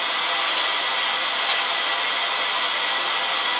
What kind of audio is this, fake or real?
real